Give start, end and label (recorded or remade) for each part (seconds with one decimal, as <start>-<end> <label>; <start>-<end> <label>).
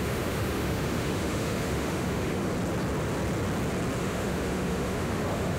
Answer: 0.0-2.5 remade; 2.5-4.0 recorded; 4.0-5.6 remade